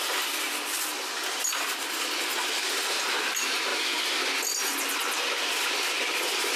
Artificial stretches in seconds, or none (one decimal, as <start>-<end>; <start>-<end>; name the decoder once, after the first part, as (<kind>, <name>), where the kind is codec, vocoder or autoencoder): none